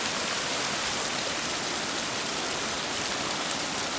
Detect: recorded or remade recorded